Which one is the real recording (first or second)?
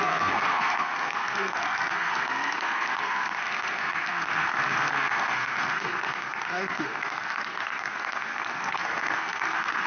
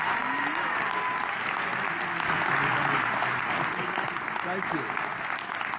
second